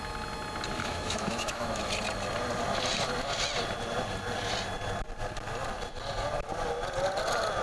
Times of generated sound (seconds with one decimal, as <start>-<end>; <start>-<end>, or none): 0.8-1.8